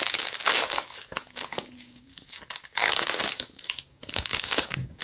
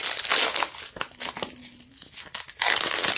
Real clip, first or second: second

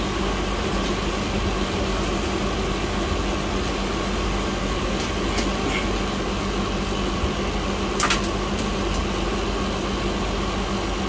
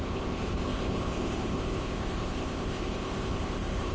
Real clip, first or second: first